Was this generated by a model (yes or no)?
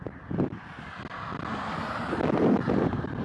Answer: no